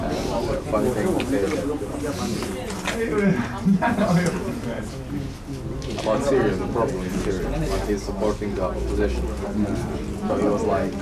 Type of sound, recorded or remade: recorded